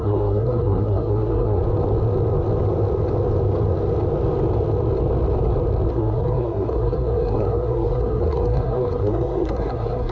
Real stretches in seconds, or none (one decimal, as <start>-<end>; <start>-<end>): 1.6-5.9